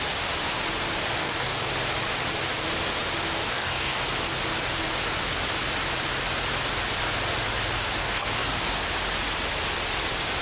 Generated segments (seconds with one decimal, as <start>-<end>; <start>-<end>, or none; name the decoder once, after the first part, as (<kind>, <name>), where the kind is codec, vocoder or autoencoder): 1.2-1.7 (codec, DAC); 3.4-4.0; 8.0-8.7